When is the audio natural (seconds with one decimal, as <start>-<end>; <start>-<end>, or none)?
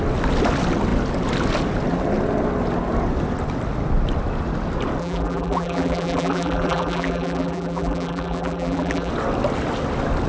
0.0-5.0; 9.1-10.3